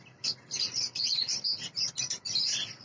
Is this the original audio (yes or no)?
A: yes